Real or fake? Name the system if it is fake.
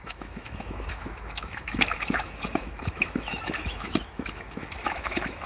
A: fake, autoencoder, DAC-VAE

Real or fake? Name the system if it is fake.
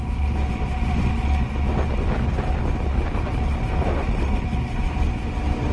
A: real